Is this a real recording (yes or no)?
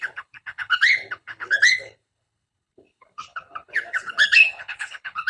no